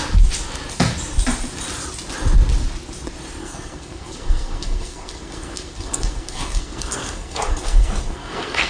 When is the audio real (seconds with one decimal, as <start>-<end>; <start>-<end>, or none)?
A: 0.0-3.4